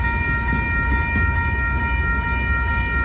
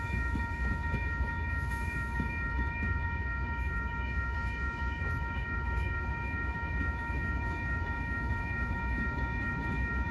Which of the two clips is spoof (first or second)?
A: second